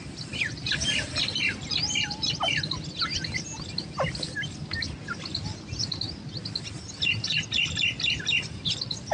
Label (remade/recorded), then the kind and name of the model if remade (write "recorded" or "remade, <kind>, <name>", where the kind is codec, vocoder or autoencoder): recorded